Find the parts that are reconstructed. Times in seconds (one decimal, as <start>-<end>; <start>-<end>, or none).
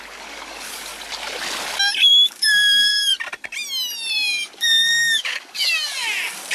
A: 0.0-0.9; 2.0-3.1; 4.1-6.5